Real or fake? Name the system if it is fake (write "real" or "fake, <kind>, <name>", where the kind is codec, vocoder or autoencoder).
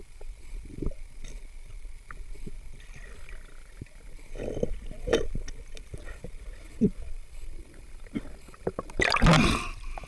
real